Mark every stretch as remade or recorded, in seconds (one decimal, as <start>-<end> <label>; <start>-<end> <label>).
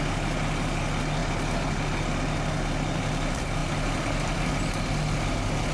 0.0-5.7 recorded